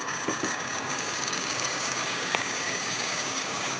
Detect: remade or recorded remade